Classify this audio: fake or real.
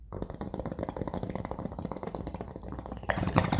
fake